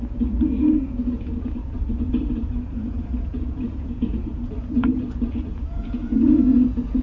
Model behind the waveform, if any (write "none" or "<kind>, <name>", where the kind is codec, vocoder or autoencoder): vocoder, Vocos